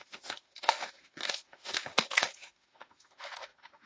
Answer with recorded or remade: remade